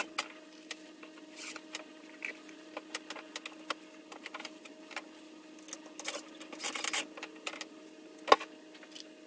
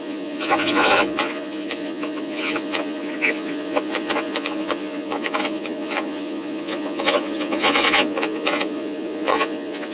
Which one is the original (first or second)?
first